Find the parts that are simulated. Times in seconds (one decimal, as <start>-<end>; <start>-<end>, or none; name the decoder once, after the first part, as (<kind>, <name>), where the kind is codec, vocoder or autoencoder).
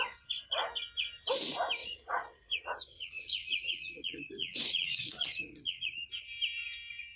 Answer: 1.8-6.1 (vocoder, Vocos)